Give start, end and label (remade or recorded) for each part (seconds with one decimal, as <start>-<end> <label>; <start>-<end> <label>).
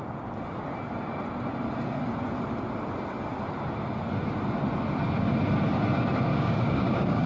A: 0.0-6.3 recorded; 6.3-7.3 remade